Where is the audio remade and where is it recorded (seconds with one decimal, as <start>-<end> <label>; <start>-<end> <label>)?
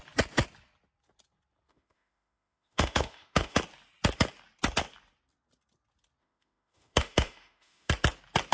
0.0-1.7 recorded; 1.7-3.6 remade; 3.6-6.2 recorded; 6.2-7.9 remade; 7.9-8.5 recorded